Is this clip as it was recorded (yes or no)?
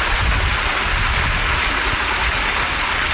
yes